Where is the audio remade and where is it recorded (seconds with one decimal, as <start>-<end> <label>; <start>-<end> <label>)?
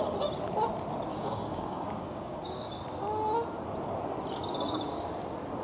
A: 0.0-1.1 recorded; 1.1-2.8 remade; 2.8-5.6 recorded